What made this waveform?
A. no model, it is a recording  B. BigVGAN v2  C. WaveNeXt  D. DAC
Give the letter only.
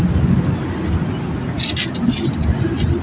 A